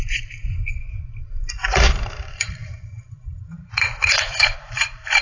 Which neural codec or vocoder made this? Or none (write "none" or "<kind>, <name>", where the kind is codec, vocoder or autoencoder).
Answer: vocoder, BigVGAN v2